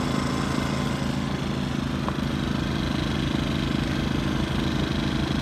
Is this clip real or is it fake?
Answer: real